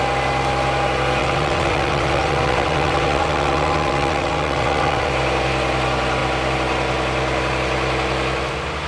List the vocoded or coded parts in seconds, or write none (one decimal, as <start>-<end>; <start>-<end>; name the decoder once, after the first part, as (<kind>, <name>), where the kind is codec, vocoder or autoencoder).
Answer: 1.2-5.1 (vocoder, WaveNeXt)